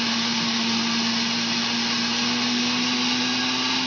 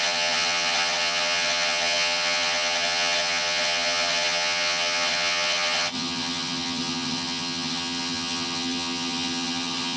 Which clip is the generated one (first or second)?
second